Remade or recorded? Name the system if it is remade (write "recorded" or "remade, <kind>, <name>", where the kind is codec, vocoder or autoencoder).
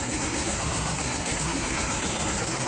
remade, codec, SNAC